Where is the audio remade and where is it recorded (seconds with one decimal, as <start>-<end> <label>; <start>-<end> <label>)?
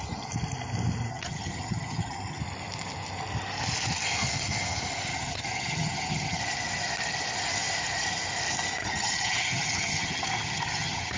0.0-1.1 recorded; 1.1-2.4 remade; 2.4-5.1 recorded; 5.1-6.4 remade; 6.4-8.8 recorded; 8.8-11.2 remade